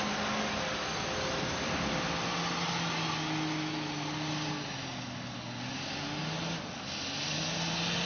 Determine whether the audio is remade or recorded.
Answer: recorded